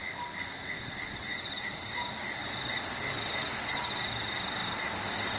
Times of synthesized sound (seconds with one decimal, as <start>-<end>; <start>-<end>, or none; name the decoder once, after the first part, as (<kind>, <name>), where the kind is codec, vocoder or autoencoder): none

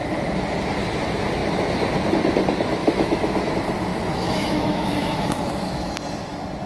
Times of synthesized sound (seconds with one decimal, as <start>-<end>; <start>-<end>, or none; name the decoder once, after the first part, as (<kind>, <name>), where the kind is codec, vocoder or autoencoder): 2.8-3.5 (autoencoder, DAC-VAE); 3.9-5.9

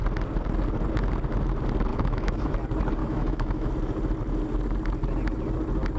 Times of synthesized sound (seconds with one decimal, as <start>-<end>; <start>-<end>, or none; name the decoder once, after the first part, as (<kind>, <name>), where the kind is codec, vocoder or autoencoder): 1.9-2.5 (autoencoder, DAC-VAE); 3.0-3.7

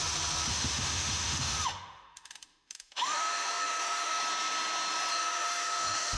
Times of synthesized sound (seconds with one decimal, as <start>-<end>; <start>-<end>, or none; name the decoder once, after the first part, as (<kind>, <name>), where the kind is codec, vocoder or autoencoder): 0.5-4.2 (autoencoder, DAC-VAE); 5.1-6.2

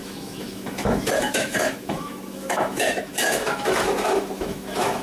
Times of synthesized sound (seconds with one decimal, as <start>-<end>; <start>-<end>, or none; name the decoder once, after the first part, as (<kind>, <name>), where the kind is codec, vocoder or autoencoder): 0.0-5.0 (autoencoder, DAC-VAE)

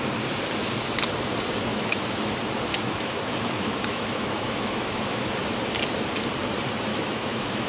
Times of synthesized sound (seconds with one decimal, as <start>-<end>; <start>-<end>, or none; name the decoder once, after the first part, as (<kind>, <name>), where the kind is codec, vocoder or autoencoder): 1.7-2.2 (autoencoder, DAC-VAE); 2.7-5.3; 6.9-7.7

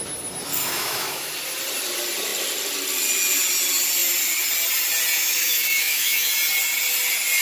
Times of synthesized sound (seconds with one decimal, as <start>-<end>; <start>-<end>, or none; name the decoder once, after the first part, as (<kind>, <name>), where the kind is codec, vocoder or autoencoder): 0.6-1.3 (autoencoder, DAC-VAE); 5.2-6.3